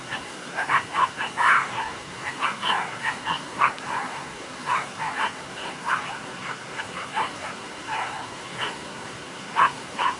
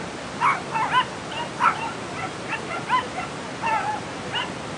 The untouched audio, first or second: second